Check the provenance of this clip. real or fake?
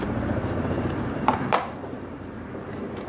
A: fake